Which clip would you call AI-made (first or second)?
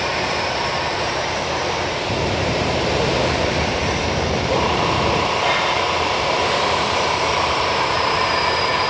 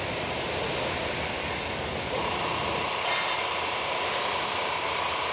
first